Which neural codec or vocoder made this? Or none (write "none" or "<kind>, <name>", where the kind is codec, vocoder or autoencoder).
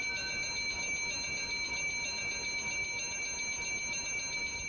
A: none